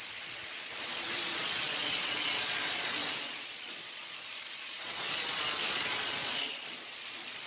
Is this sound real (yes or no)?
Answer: no